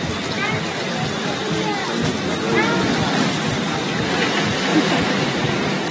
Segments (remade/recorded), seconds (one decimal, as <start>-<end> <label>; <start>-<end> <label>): 0.0-4.7 recorded; 4.7-5.4 remade; 5.4-5.9 recorded